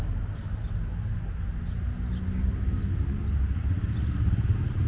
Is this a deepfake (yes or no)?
no